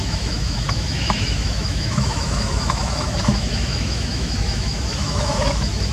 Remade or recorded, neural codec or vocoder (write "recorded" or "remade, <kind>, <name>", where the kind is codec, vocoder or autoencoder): remade, autoencoder, DAC-VAE